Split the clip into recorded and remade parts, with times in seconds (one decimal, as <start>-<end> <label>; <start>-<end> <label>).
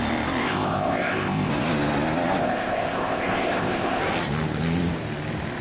0.0-0.4 recorded; 0.4-1.5 remade; 1.5-2.4 recorded; 2.4-4.0 remade; 4.0-5.6 recorded